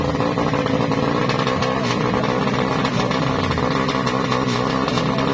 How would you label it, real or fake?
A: real